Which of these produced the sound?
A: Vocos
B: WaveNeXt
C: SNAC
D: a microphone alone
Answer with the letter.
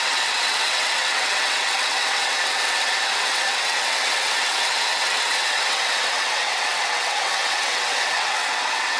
B